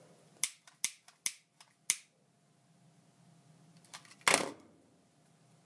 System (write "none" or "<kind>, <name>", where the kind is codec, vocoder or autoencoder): none